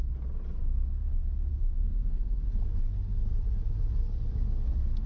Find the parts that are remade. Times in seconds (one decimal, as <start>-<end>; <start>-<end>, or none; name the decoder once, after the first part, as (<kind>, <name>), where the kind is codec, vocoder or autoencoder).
1.5-2.4 (codec, SNAC)